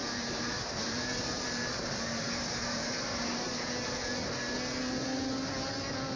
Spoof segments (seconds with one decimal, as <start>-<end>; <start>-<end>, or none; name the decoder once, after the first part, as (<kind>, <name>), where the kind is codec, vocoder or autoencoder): 0.0-3.7 (vocoder, BigVGAN v2)